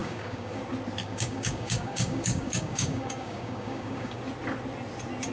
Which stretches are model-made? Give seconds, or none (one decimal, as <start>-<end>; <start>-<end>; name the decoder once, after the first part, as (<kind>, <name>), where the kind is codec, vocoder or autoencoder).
0.0-0.6 (codec, DAC); 1.0-4.2